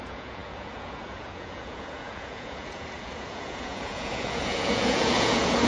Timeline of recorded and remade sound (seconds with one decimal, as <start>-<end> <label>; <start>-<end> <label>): 0.0-5.7 remade